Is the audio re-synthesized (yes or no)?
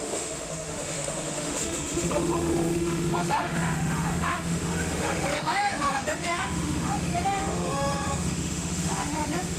yes